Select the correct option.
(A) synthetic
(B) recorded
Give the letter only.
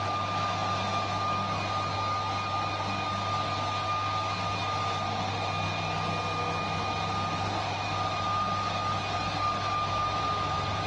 B